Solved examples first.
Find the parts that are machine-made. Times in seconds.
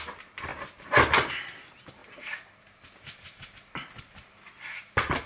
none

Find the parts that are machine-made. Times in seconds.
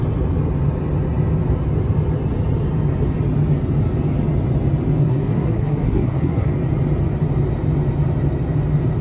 5.0-6.5 (codec, SNAC)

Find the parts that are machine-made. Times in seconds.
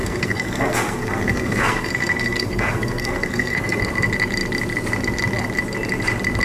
0.0-3.8 (codec, SNAC)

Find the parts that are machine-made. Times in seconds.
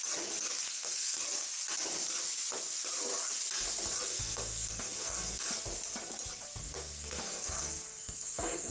0.7-1.2 (codec, SNAC); 4.1-5.4; 6.6-8.7